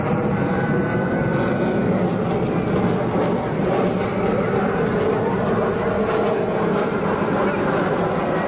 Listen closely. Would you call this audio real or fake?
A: real